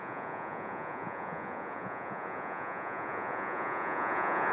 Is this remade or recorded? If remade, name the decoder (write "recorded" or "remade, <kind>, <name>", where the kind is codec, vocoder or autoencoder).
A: remade, vocoder, Vocos